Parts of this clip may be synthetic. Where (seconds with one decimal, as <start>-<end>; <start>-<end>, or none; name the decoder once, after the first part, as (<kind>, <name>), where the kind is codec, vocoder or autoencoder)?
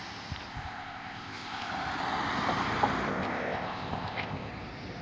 0.5-1.7 (codec, ZipCodec); 3.1-4.5